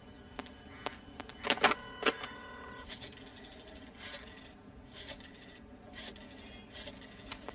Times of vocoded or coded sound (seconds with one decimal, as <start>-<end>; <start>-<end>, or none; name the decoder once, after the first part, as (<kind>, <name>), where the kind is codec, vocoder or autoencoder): none